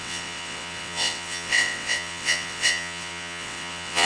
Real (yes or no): no